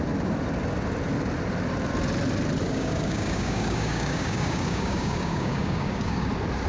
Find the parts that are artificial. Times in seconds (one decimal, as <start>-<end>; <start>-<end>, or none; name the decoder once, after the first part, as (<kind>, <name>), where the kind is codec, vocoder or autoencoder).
2.6-6.3 (codec, DAC)